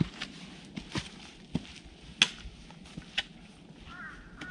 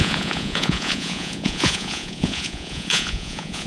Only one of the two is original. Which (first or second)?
first